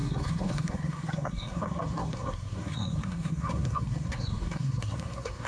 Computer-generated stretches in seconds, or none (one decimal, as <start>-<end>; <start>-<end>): 0.0-5.5